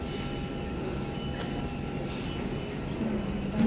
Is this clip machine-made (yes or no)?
no